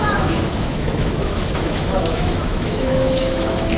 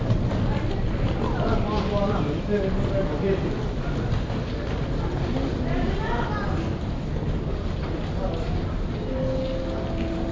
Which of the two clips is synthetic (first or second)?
first